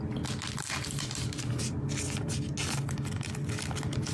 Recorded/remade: recorded